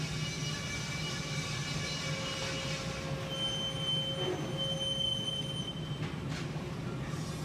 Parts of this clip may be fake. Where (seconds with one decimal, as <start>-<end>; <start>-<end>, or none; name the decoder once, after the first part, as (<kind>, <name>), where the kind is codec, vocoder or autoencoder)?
none